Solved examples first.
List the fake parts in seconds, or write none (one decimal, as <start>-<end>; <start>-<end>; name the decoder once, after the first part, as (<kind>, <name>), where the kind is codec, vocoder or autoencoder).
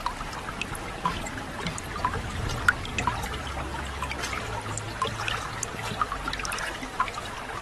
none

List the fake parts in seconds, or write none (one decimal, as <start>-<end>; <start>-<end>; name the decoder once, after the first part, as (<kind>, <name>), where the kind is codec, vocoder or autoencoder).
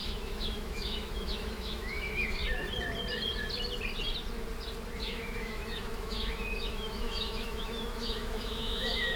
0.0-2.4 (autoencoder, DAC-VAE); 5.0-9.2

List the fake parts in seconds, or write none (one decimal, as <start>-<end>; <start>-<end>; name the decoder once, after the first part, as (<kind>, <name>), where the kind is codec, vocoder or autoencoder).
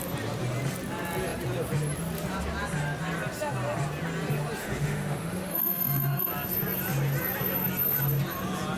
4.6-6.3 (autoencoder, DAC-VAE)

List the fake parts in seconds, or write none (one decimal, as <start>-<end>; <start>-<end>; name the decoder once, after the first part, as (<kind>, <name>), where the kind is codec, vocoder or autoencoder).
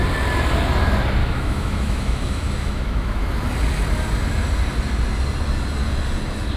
1.2-3.3 (autoencoder, DAC-VAE)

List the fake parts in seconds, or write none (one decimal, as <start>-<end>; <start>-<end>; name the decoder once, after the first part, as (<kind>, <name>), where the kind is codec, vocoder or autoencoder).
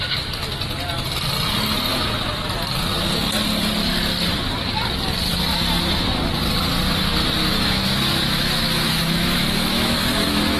7.4-10.6 (autoencoder, DAC-VAE)